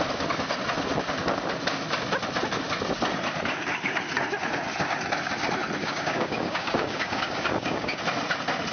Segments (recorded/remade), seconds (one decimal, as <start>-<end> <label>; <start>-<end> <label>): 0.0-5.8 recorded; 5.8-8.0 remade; 8.0-8.7 recorded